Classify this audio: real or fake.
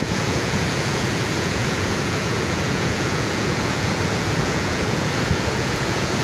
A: fake